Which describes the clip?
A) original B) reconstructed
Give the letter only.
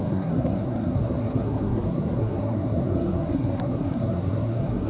B